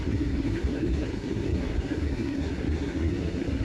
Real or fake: fake